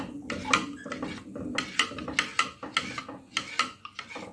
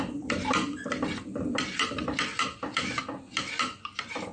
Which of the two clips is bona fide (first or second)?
first